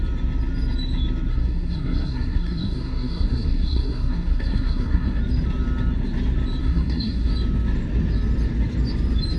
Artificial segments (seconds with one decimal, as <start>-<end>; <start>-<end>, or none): 1.3-5.2; 6.6-7.3